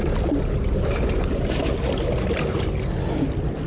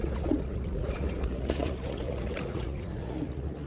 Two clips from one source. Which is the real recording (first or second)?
first